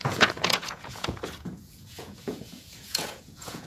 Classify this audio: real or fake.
fake